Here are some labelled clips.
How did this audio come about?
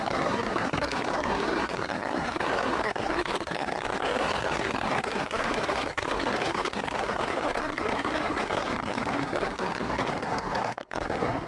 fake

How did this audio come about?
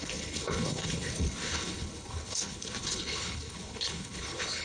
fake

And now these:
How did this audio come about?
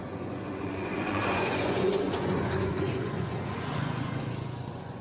fake